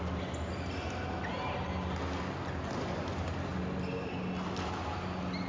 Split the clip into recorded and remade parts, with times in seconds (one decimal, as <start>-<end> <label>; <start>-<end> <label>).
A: 0.0-5.5 recorded